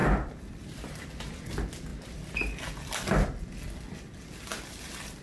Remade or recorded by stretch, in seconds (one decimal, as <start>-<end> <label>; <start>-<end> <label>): 0.0-1.2 remade; 1.2-1.9 recorded; 1.9-3.4 remade; 3.4-4.5 recorded; 4.5-5.2 remade